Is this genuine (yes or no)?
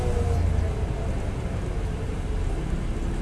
yes